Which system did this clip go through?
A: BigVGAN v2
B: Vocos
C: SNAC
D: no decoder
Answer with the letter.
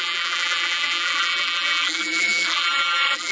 A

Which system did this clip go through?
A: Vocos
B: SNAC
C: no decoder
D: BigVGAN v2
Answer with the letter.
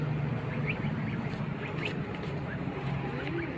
C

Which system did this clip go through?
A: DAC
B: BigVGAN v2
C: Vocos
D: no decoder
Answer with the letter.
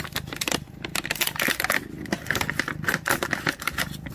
D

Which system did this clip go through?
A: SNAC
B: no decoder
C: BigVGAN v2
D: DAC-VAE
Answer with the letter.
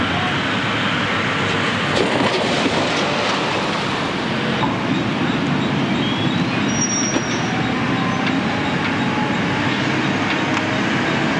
B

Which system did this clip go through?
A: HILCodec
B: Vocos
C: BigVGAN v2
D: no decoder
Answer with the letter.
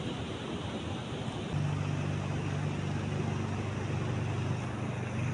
D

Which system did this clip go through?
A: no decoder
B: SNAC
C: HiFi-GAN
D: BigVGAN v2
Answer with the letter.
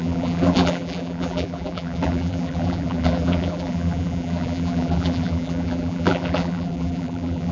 D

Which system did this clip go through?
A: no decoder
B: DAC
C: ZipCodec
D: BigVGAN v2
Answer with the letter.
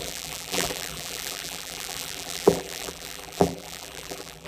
D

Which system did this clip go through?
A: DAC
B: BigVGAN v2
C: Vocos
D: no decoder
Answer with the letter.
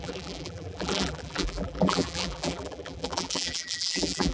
B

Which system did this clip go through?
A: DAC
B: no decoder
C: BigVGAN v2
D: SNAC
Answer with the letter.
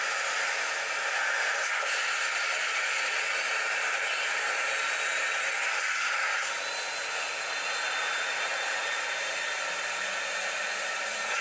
C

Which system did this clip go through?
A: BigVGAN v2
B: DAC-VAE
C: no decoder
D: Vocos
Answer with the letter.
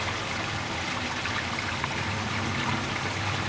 C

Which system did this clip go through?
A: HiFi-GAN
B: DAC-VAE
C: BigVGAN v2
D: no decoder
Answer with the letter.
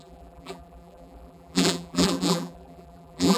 C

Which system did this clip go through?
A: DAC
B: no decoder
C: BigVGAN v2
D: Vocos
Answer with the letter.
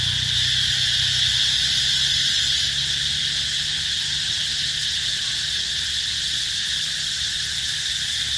B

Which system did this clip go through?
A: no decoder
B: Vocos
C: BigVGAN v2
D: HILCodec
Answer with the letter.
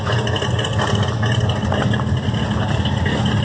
A